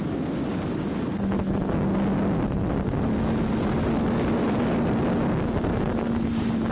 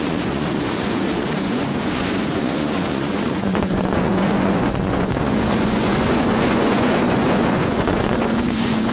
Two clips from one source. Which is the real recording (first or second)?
first